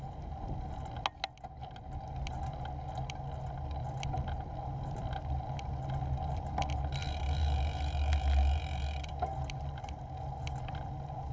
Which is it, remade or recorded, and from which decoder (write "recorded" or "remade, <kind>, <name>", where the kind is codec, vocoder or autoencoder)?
recorded